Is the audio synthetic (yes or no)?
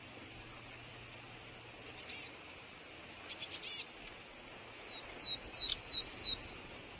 no